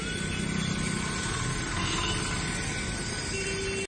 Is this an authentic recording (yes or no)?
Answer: yes